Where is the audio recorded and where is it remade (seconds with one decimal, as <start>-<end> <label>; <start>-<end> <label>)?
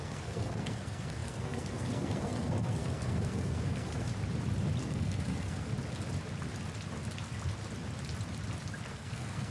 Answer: 0.0-4.1 remade; 4.1-4.8 recorded; 4.8-5.7 remade; 5.7-8.9 recorded; 8.9-9.5 remade